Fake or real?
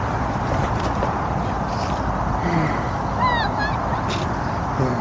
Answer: real